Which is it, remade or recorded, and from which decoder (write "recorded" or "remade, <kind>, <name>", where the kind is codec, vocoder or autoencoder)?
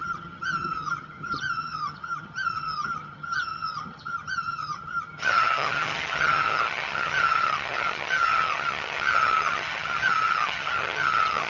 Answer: remade, vocoder, HiFi-GAN